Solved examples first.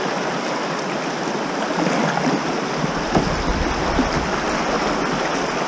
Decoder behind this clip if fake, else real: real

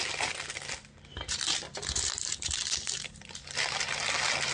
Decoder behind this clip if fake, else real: real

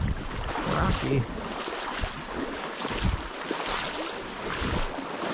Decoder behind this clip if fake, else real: real